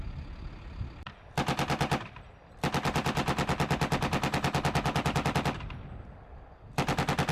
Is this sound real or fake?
real